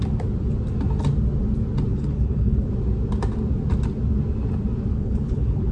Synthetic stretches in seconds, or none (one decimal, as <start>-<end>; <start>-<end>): 1.9-2.7; 4.9-5.7